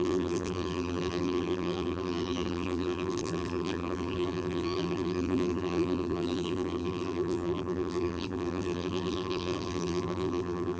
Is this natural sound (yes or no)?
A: no